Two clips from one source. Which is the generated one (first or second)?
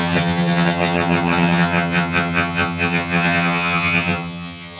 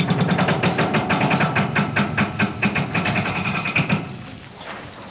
first